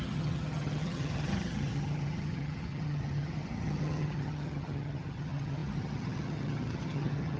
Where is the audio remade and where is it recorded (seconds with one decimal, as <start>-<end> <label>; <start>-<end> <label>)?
0.0-7.4 remade